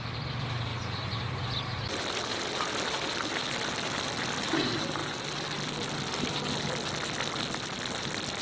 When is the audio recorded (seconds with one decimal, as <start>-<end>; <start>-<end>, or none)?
0.0-8.4